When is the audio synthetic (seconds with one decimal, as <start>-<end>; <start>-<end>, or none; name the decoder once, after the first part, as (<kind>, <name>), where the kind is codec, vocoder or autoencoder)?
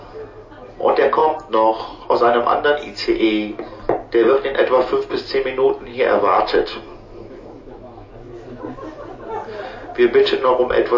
5.9-8.6 (autoencoder, DAC-VAE)